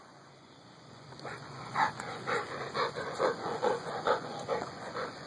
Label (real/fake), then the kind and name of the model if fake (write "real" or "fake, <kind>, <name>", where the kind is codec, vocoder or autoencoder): fake, vocoder, Vocos